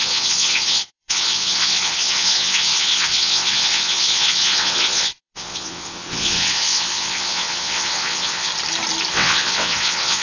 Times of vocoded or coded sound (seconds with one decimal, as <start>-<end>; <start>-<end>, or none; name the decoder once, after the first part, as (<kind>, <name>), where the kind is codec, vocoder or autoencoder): 0.0-8.5 (vocoder, WaveNeXt); 9.1-10.2